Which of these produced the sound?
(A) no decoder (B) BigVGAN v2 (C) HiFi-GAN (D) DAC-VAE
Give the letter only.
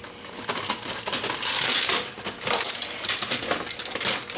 A